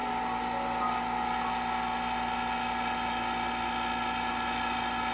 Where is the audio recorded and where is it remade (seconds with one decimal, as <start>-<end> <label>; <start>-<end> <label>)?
0.0-5.1 recorded